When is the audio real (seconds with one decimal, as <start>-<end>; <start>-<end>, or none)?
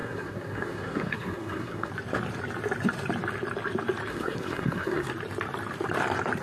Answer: 1.9-4.1; 5.1-6.4